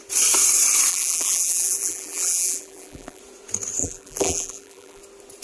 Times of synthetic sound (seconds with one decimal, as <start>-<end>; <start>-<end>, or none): 0.9-3.2; 3.8-5.0